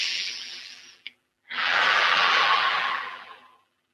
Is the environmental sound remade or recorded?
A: remade